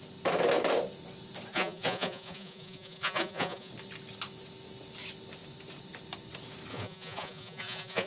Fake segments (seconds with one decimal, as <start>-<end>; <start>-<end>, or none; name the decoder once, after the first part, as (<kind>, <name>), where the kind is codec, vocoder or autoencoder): 1.5-3.7 (vocoder, Vocos); 6.7-8.1